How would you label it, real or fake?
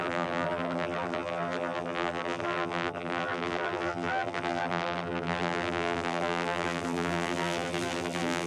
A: fake